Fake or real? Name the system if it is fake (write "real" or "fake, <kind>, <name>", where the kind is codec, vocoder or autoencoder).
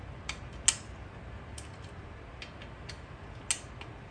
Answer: real